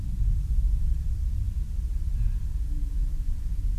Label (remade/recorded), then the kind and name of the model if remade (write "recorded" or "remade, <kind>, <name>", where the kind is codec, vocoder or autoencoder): recorded